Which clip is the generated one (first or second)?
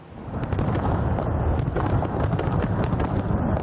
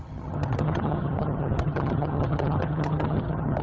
second